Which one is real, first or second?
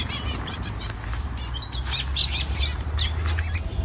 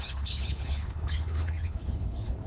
first